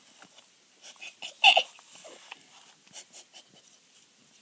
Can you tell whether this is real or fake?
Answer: real